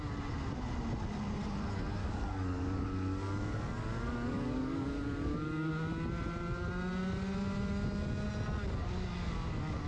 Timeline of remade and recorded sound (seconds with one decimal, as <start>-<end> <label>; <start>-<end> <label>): 0.0-2.0 recorded; 2.0-5.7 remade; 5.7-8.8 recorded; 8.8-9.9 remade